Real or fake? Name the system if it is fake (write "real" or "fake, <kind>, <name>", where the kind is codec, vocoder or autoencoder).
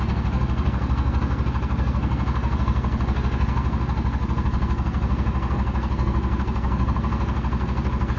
fake, codec, SNAC